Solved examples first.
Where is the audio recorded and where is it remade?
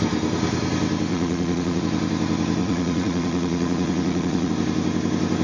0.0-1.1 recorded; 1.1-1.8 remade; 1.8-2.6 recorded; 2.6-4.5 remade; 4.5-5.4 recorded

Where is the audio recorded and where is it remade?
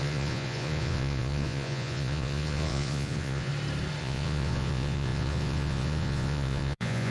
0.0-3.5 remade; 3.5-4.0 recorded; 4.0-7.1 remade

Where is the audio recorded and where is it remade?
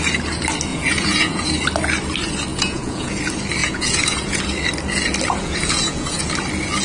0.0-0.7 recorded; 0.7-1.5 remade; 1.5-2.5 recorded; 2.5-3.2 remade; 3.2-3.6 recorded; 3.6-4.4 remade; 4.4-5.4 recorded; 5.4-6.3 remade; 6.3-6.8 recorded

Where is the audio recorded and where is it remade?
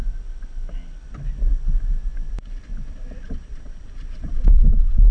0.0-3.2 recorded; 3.2-5.1 remade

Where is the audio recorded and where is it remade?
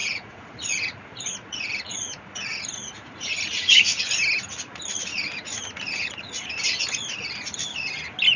0.0-4.0 remade; 4.0-5.1 recorded; 5.1-6.5 remade; 6.5-8.4 recorded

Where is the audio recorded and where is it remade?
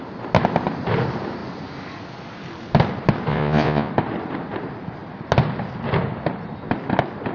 0.0-3.3 recorded; 3.3-3.9 remade; 3.9-7.3 recorded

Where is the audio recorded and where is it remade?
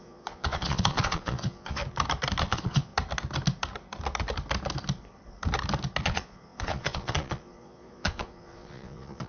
0.0-1.8 remade; 1.8-2.4 recorded; 2.4-2.9 remade; 2.9-6.0 recorded; 6.0-9.3 remade